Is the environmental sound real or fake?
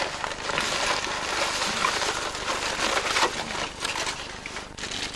real